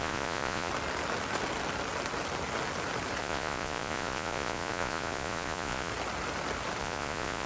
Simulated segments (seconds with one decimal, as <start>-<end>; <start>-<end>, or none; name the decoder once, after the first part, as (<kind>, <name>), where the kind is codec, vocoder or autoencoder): 0.0-0.7 (vocoder, Vocos); 3.2-5.9; 6.8-7.5